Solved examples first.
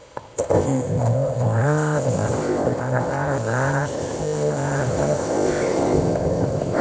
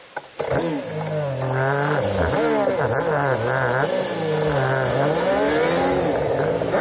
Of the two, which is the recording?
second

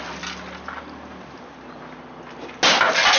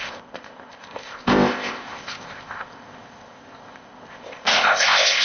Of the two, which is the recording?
first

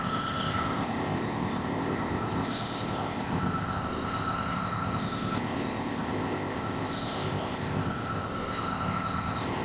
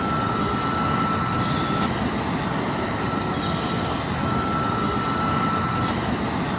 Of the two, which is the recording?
second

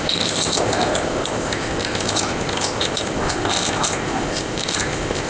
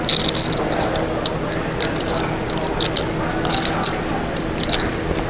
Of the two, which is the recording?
second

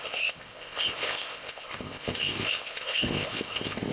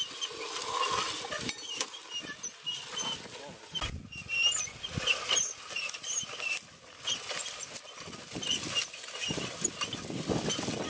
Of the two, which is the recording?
second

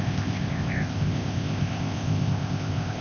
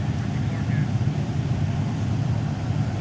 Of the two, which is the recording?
second